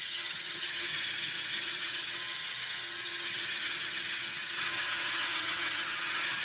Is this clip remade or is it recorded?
remade